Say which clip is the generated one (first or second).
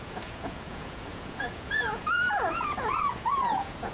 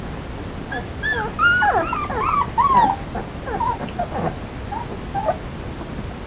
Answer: first